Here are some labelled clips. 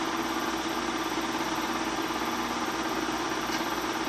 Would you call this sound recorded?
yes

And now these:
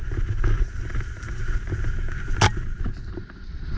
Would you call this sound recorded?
yes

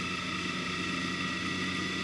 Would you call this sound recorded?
yes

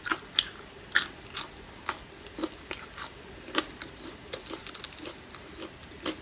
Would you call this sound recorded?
yes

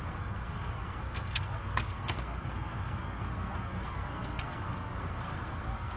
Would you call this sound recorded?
no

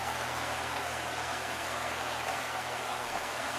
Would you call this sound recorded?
no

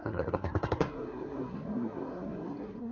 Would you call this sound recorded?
no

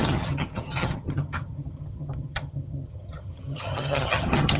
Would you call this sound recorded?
no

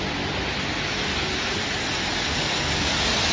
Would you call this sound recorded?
yes